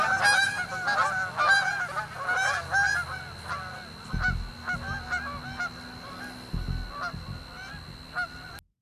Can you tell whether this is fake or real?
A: real